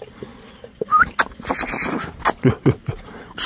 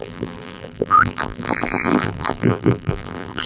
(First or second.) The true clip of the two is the first